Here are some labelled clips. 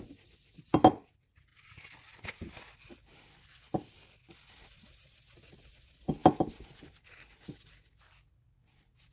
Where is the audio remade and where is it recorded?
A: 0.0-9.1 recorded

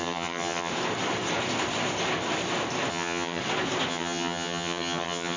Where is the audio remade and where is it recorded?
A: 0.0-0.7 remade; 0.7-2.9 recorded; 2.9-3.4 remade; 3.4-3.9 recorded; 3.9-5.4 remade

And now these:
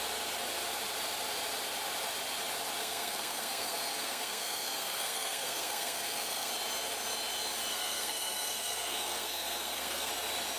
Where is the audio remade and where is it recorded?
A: 0.0-2.8 recorded; 2.8-6.5 remade; 6.5-7.7 recorded; 7.7-10.1 remade; 10.1-10.6 recorded

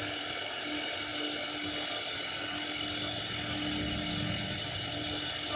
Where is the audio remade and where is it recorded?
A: 0.0-5.6 recorded

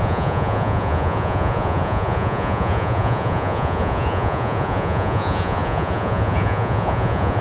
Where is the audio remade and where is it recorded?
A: 0.0-7.4 remade